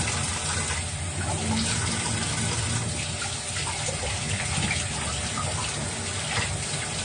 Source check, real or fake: real